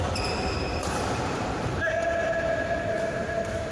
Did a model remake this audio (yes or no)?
yes